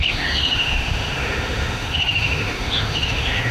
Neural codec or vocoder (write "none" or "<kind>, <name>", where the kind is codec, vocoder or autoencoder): autoencoder, DAC-VAE